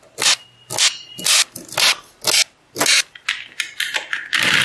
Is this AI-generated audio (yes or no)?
no